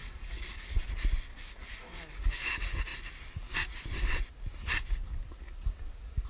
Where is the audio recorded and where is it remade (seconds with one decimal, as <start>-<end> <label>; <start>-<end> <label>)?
0.0-0.9 remade; 0.9-1.3 recorded; 1.3-2.5 remade; 2.5-6.3 recorded